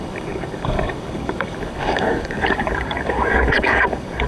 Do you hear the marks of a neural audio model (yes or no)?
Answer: yes